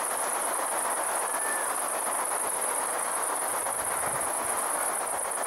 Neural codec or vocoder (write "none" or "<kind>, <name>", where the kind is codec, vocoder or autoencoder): none